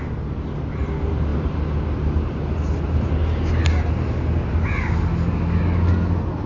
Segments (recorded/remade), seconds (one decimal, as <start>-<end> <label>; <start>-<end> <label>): 0.0-6.5 recorded